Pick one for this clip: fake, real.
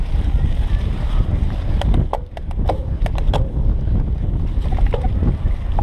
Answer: real